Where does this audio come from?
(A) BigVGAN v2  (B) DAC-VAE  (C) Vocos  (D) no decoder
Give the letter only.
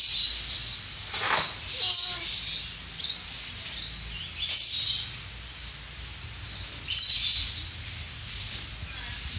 D